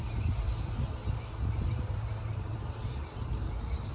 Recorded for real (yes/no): yes